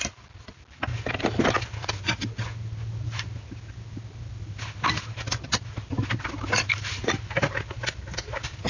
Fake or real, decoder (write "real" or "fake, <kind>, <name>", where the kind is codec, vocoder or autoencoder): real